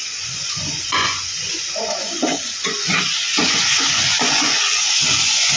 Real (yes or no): no